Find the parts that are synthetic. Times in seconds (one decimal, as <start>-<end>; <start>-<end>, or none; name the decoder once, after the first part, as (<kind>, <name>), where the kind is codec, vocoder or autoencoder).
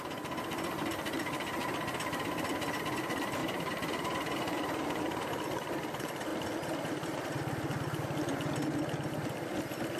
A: 3.4-5.4 (vocoder, BigVGAN v2)